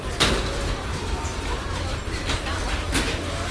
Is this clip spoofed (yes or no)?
no